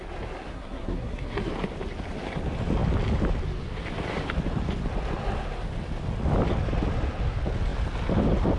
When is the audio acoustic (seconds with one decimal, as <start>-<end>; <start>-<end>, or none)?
0.0-0.5; 1.5-8.6